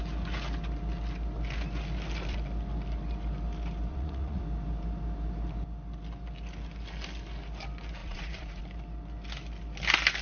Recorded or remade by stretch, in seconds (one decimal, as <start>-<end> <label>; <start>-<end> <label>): 0.0-3.9 recorded; 3.9-4.4 remade; 4.4-8.0 recorded; 8.0-8.6 remade; 8.6-10.2 recorded